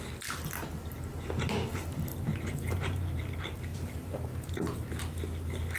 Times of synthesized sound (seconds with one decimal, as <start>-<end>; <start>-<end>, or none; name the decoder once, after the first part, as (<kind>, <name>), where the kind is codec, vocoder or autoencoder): 2.1-3.2 (vocoder, BigVGAN v2); 3.7-5.0